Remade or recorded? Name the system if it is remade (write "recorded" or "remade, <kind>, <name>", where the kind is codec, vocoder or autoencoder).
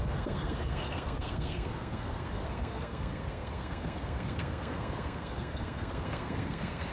remade, codec, SNAC